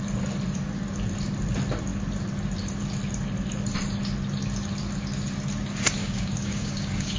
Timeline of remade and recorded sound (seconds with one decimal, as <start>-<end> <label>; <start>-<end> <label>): 0.0-6.0 recorded; 6.0-7.2 remade